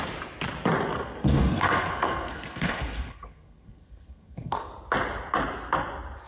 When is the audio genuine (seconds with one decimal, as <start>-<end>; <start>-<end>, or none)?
0.0-0.9; 4.7-6.3